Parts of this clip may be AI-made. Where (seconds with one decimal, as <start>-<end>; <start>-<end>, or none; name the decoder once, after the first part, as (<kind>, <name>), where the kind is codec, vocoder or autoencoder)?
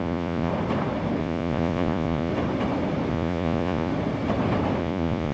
0.0-0.5 (vocoder, Vocos); 1.2-2.3; 3.1-3.9; 4.8-5.3